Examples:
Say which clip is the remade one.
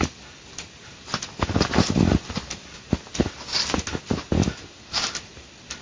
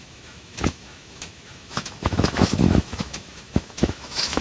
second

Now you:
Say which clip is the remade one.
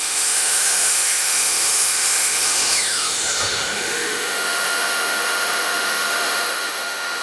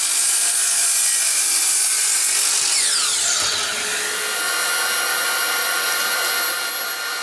first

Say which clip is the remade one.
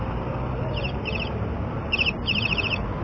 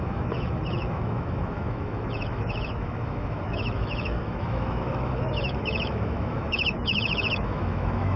second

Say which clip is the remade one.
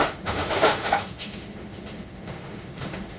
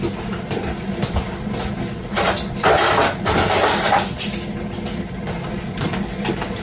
first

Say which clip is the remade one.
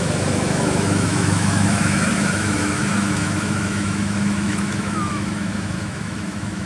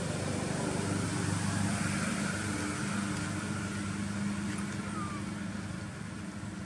first